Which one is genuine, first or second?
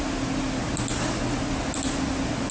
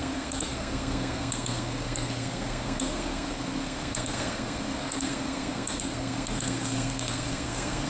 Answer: first